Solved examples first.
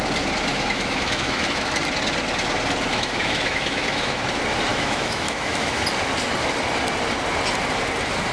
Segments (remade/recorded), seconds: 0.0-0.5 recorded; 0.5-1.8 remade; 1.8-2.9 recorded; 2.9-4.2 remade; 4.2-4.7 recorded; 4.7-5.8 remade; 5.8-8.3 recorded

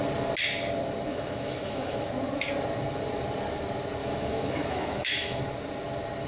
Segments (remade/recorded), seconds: 0.0-1.1 recorded; 1.1-2.1 remade; 2.1-4.0 recorded; 4.0-5.4 remade; 5.4-6.3 recorded

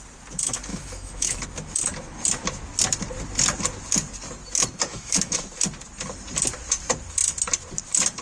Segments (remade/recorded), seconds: 0.0-0.7 recorded; 0.7-1.4 remade; 1.4-4.9 recorded; 4.9-5.4 remade; 5.4-8.2 recorded

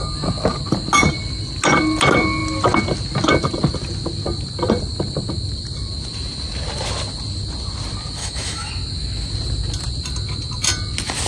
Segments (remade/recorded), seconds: 0.0-8.2 recorded; 8.2-8.7 remade; 8.7-11.3 recorded

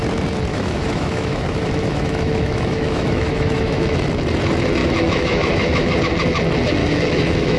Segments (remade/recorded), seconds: 0.0-0.5 recorded; 0.5-4.0 remade; 4.0-4.8 recorded; 4.8-6.0 remade; 6.0-6.8 recorded; 6.8-7.6 remade

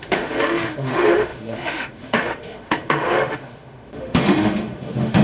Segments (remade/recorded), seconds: 0.0-5.2 remade

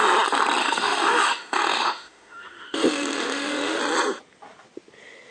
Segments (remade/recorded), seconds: 0.0-0.6 recorded; 0.6-3.8 remade; 3.8-5.3 recorded

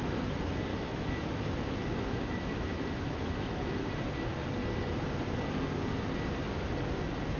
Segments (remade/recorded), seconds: 0.0-0.7 recorded; 0.7-3.9 remade; 3.9-7.4 recorded